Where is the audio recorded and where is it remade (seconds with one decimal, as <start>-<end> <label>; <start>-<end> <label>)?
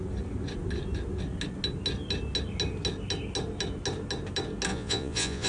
0.0-4.7 recorded; 4.7-5.5 remade